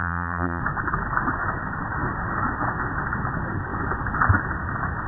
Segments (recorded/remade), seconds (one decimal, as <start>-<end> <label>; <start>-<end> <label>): 0.0-0.6 remade; 0.6-5.1 recorded